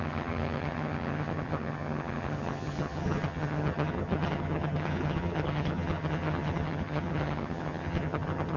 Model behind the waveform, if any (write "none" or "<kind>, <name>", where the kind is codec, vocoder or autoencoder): vocoder, HiFi-GAN